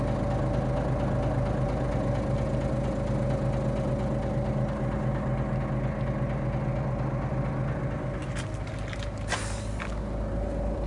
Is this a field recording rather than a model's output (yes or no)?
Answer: yes